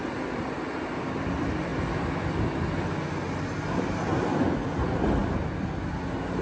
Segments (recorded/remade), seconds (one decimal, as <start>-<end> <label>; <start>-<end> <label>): 0.0-6.4 recorded